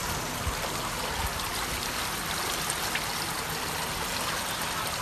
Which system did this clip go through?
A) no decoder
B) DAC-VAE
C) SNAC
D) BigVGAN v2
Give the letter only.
A